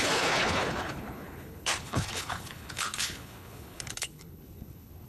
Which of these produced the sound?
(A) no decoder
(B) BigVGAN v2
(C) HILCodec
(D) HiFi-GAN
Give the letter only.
C